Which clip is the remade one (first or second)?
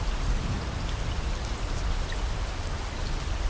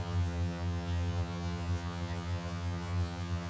second